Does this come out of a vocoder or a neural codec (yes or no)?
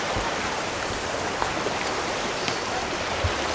yes